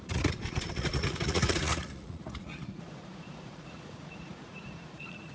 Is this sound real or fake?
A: fake